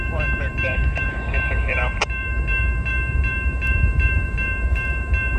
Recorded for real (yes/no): no